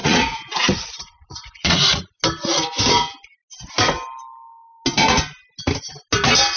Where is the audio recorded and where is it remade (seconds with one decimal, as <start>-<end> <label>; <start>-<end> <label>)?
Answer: 0.0-2.2 remade; 2.2-6.6 recorded